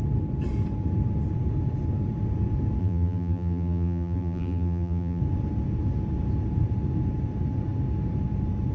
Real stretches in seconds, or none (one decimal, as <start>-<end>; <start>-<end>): 0.0-2.8; 5.2-8.7